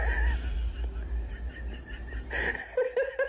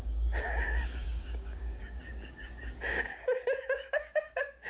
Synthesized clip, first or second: second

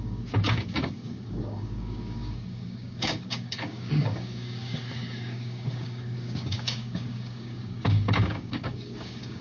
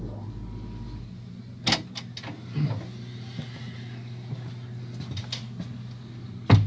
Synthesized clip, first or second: first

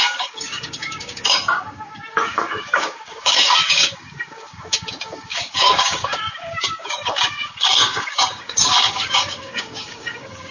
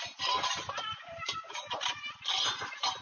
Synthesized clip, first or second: first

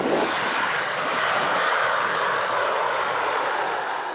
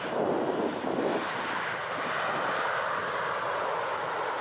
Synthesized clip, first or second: first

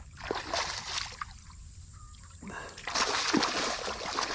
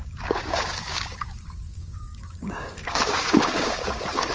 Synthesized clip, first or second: second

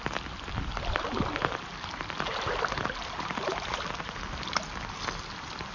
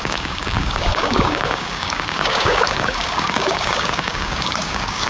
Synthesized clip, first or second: second